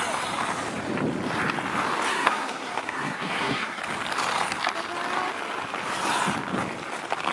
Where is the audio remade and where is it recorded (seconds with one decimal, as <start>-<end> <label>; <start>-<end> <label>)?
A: 0.0-2.1 recorded; 2.1-3.8 remade; 3.8-7.3 recorded